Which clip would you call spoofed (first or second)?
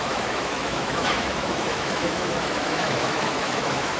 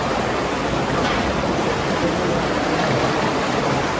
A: first